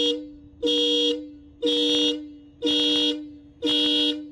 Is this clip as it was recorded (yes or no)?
yes